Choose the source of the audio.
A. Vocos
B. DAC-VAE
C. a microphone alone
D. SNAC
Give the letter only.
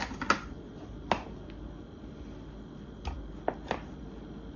C